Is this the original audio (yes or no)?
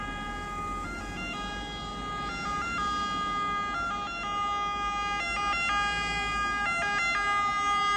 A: yes